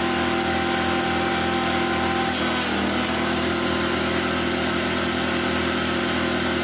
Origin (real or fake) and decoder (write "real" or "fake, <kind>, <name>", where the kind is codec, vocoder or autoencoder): real